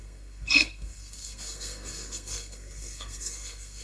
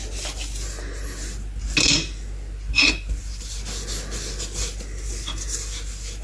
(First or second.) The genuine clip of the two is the second